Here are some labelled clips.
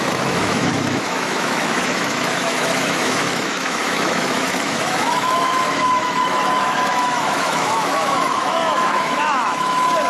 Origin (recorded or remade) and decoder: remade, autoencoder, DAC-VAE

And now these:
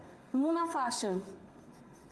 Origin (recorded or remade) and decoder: remade, codec, SNAC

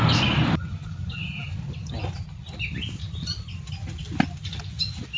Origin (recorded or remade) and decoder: recorded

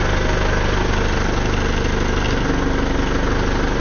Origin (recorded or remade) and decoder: recorded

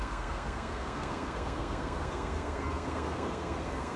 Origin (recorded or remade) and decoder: remade, codec, SNAC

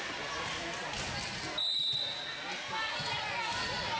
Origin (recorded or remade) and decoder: recorded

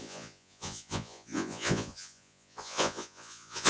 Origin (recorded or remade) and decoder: remade, vocoder, Vocos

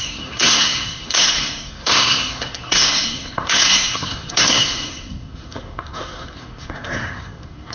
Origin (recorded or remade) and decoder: remade, codec, SNAC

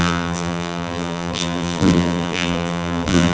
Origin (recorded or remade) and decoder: remade, vocoder, BigVGAN v2